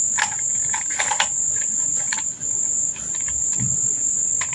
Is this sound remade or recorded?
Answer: recorded